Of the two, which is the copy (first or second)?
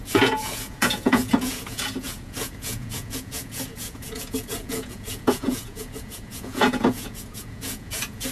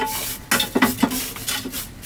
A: first